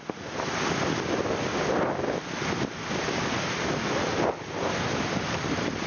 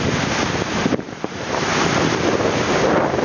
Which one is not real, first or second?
second